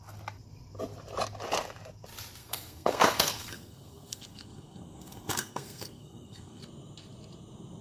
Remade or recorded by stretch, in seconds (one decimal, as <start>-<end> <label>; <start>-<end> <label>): 0.0-2.4 recorded; 2.4-6.6 remade; 6.6-7.8 recorded